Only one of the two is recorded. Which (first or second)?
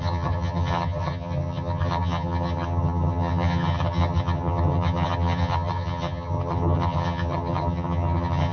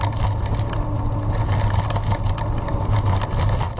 second